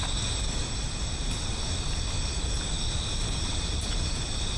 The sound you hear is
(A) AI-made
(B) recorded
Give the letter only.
B